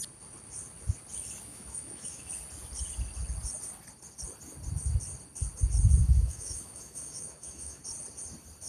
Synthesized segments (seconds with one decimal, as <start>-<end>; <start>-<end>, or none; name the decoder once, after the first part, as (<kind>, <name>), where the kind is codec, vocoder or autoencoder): 1.5-2.3 (autoencoder, DAC-VAE); 6.0-7.8